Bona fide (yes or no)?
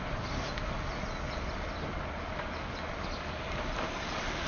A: yes